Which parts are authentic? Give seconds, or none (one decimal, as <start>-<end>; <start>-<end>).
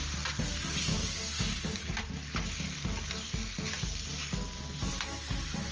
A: 0.0-0.9; 2.0-5.7